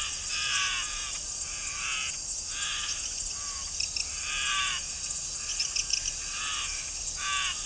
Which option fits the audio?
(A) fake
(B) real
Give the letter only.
B